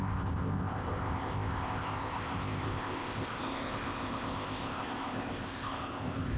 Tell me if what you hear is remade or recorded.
remade